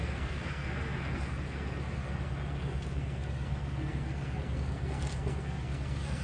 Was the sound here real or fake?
fake